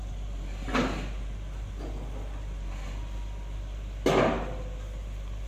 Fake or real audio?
real